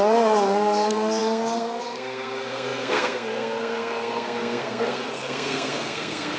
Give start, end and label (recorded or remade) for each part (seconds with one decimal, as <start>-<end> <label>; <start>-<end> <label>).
0.0-6.4 remade

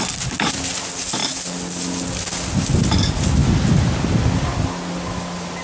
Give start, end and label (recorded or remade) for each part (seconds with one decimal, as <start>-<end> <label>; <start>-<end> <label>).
0.0-5.6 recorded